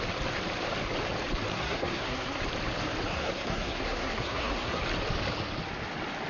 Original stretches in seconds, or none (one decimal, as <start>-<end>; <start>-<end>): 0.0-1.5; 2.4-3.1; 4.8-6.3